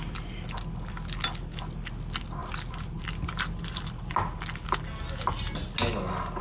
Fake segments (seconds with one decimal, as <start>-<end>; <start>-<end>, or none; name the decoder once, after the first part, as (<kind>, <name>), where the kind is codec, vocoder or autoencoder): none